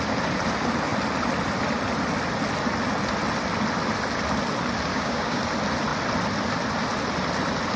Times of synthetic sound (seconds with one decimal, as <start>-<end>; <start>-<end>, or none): 4.9-5.4

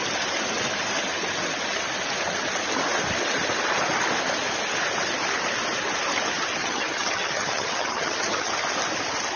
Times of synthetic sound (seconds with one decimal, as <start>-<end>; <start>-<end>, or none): 6.6-8.5

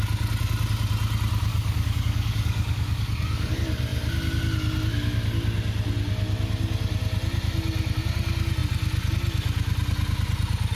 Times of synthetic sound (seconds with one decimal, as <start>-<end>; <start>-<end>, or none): 1.5-3.5